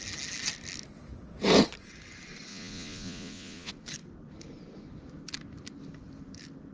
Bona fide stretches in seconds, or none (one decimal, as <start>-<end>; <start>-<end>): 0.0-2.5; 3.7-6.7